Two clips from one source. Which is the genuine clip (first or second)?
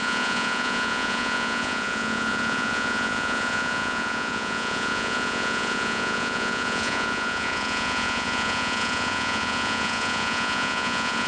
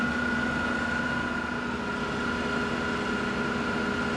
second